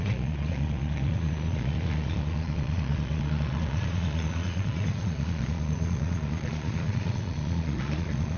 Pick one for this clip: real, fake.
fake